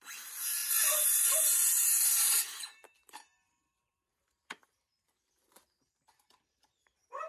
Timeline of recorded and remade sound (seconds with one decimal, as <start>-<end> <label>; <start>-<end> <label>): 0.0-0.6 remade; 0.6-2.2 recorded; 2.2-7.3 remade

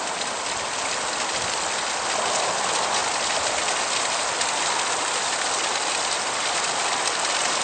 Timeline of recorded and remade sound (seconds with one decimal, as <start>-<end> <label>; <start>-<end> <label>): 0.0-7.6 recorded

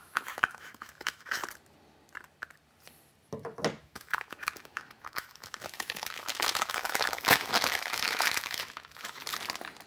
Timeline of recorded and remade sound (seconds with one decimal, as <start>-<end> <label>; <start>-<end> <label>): 0.0-1.4 remade; 1.4-3.8 recorded; 3.8-9.2 remade; 9.2-9.9 recorded

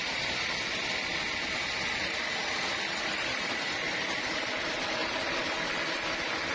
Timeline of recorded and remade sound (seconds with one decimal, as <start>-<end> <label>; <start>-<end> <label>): 0.0-2.0 recorded; 2.0-4.4 remade; 4.4-5.0 recorded; 5.0-5.8 remade; 5.8-6.5 recorded

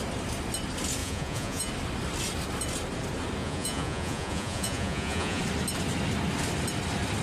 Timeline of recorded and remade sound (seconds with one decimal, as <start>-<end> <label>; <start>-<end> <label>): 0.0-1.0 recorded; 1.0-1.7 remade; 1.7-3.4 recorded; 3.4-5.4 remade; 5.4-7.2 recorded

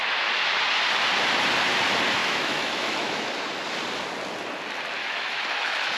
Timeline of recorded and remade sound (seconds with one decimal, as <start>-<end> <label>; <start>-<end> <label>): 0.0-2.2 recorded; 2.2-3.3 remade; 3.3-5.0 recorded; 5.0-6.0 remade

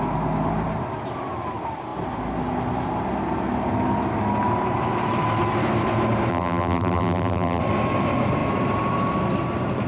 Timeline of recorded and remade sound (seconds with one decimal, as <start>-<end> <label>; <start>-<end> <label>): 0.0-6.3 recorded; 6.3-7.6 remade; 7.6-9.9 recorded

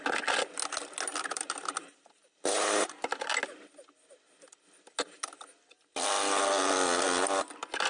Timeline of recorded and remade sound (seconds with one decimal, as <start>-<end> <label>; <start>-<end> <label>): 0.0-1.1 recorded; 1.1-3.3 remade; 3.3-7.9 recorded